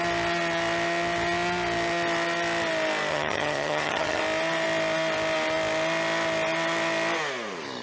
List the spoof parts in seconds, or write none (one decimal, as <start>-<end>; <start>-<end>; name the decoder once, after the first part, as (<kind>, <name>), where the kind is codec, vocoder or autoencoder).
3.1-4.2 (vocoder, HiFi-GAN)